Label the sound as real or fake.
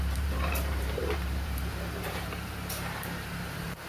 fake